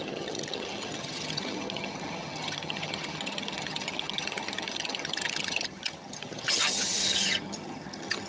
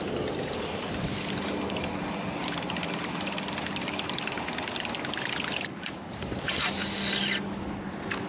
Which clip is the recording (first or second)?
second